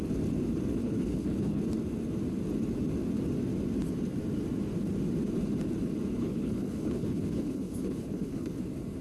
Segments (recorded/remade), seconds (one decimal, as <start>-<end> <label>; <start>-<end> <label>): 0.0-0.8 recorded; 0.8-1.6 remade; 1.6-6.2 recorded; 6.2-8.6 remade; 8.6-9.0 recorded